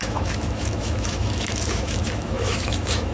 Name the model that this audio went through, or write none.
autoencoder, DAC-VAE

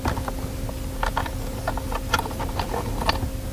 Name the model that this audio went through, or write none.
none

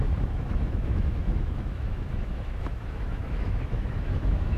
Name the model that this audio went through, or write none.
autoencoder, DAC-VAE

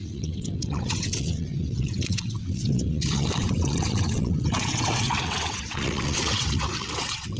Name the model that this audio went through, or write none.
vocoder, WaveNeXt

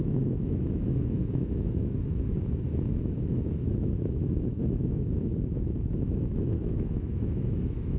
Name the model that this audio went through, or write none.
autoencoder, DAC-VAE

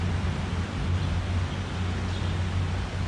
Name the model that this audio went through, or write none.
none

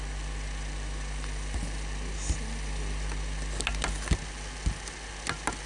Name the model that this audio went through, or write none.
none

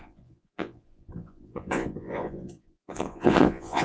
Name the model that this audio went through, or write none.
vocoder, Vocos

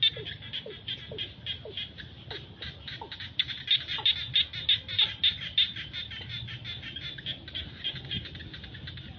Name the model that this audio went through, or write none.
none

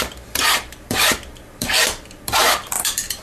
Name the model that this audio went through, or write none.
vocoder, BigVGAN v2